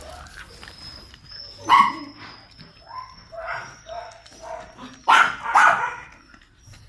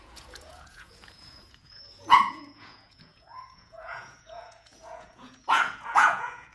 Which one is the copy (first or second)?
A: second